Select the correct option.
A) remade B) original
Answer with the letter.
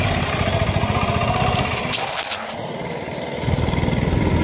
B